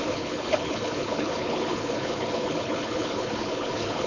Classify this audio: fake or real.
fake